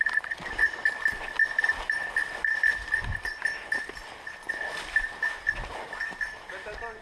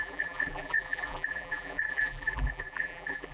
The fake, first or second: second